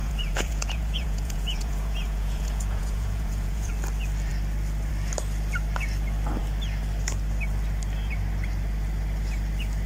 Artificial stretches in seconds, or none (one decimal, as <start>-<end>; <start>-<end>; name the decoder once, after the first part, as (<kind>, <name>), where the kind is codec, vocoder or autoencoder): 0.0-3.7 (vocoder, Vocos)